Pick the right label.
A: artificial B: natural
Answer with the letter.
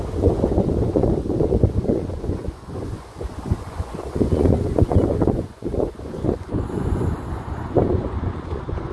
A